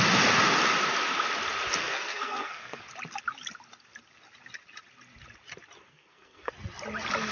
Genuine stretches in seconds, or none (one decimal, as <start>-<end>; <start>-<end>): 0.0-1.8; 2.8-5.9; 6.5-7.3